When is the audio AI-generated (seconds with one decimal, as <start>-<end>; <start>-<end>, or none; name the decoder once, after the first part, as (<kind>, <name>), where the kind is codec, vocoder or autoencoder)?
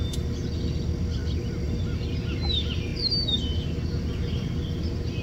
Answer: none